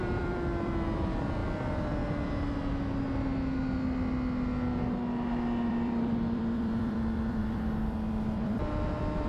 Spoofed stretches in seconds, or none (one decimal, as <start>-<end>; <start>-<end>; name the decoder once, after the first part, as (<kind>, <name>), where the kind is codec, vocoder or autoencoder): 0.0-1.4 (vocoder, BigVGAN v2); 5.7-9.3